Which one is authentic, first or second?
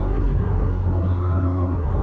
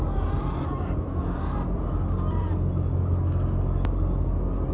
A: second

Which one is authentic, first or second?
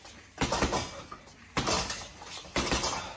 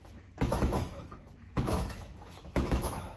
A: first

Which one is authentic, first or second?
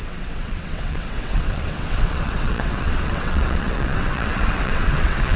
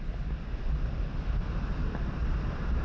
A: second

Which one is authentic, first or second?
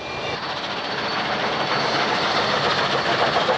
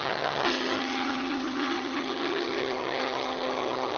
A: first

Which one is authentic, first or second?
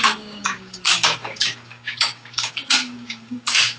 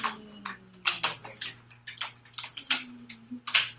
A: second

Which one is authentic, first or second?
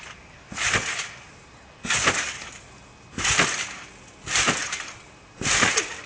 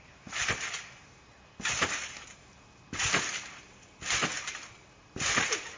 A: first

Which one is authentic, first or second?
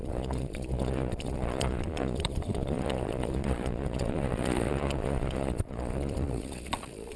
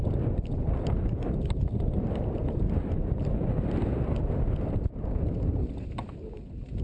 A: second